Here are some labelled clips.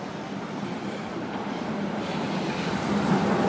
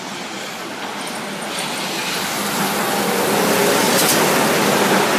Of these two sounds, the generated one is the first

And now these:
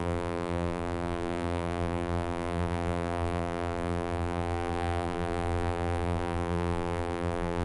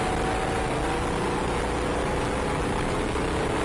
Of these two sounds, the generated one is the first